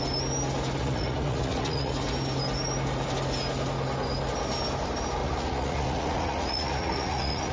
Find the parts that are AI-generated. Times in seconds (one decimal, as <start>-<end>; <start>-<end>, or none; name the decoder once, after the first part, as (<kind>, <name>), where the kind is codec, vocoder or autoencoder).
0.8-1.9 (vocoder, Vocos); 5.2-7.5